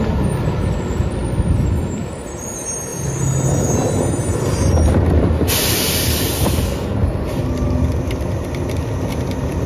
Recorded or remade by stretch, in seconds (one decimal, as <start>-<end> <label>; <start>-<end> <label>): 0.0-9.7 recorded